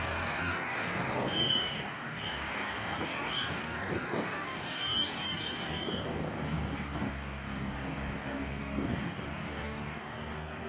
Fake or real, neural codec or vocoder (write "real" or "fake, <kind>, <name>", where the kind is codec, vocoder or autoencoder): fake, codec, DAC